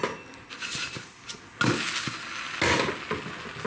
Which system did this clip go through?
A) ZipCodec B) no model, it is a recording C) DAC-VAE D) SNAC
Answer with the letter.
B